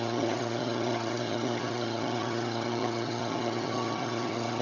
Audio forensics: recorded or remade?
remade